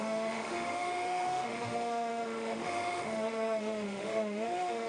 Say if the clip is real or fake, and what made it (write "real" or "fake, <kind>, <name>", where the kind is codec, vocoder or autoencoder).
fake, autoencoder, DAC-VAE